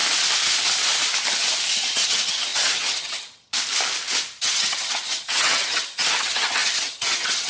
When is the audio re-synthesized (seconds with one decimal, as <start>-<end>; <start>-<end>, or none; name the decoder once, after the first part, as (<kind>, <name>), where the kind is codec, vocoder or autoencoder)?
1.7-3.5 (vocoder, HiFi-GAN); 4.4-7.5